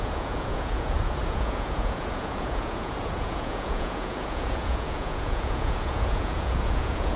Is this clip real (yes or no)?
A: no